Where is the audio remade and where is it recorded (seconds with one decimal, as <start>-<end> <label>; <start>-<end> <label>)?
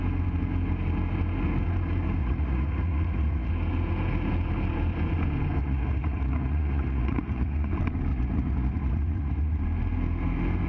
0.0-2.2 recorded; 2.2-3.5 remade; 3.5-5.6 recorded; 5.6-7.7 remade; 7.7-8.1 recorded; 8.1-9.6 remade; 9.6-10.7 recorded